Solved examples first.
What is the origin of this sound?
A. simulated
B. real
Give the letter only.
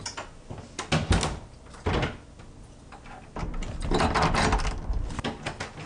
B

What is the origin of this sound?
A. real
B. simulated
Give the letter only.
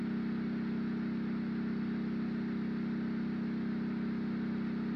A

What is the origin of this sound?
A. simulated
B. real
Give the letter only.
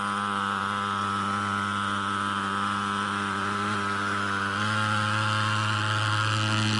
B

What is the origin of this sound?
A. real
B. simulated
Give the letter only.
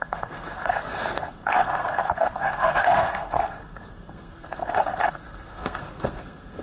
B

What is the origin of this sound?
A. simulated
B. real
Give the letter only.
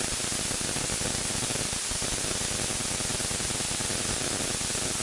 B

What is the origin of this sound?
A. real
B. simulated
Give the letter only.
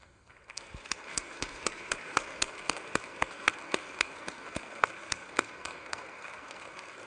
B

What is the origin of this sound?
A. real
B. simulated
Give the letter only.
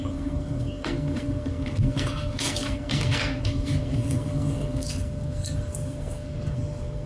B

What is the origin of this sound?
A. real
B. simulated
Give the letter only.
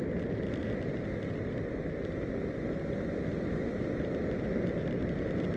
A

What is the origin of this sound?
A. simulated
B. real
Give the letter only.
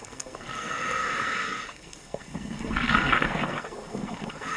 A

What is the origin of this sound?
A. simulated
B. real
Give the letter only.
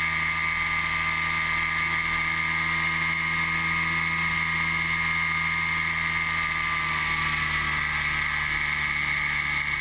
B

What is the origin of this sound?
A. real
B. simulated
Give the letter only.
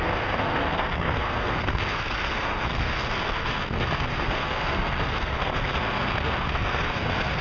B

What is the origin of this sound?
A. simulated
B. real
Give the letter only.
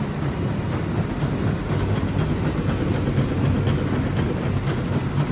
B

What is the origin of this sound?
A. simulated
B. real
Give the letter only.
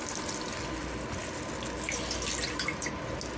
B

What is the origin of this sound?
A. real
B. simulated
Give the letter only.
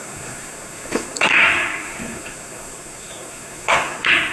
B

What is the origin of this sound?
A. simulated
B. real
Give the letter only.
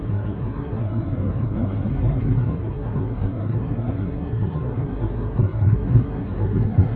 A